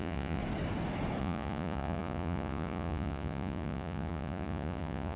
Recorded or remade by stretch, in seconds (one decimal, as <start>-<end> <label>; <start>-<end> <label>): 0.0-0.4 remade; 0.4-1.2 recorded; 1.2-5.2 remade